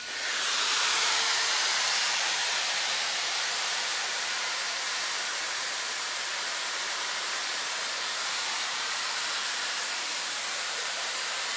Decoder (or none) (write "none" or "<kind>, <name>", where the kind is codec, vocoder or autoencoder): vocoder, BigVGAN v2